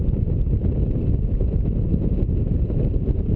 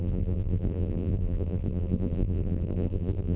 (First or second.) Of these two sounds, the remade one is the second